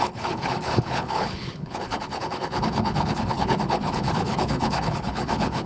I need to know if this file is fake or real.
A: fake